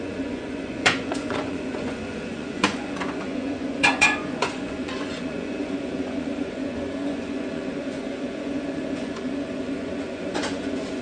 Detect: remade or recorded remade